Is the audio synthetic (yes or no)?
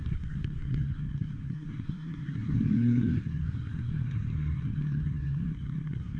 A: yes